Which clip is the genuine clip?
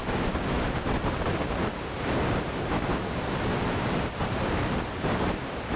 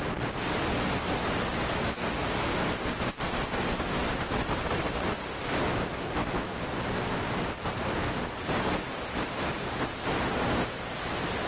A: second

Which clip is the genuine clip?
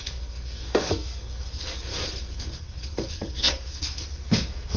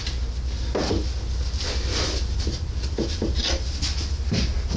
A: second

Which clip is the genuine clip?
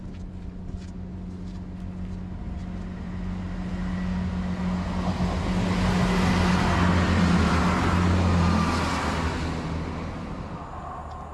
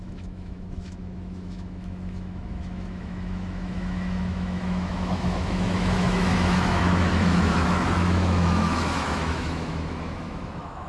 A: first